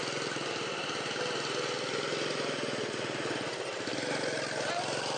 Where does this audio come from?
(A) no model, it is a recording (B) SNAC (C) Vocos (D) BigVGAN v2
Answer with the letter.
A